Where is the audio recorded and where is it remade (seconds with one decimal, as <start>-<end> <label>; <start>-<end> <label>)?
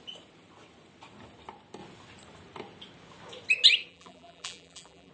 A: 0.0-3.9 recorded; 3.9-5.1 remade